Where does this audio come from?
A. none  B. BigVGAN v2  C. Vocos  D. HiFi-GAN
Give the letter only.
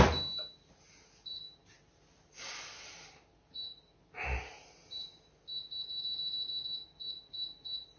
A